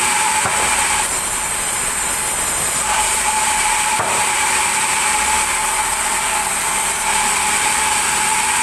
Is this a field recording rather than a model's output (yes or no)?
no